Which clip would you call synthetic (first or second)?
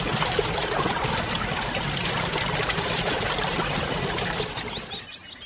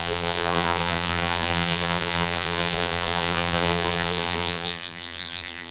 second